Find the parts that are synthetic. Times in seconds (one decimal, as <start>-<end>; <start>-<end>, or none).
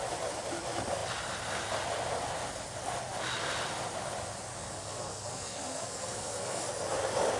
4.6-6.6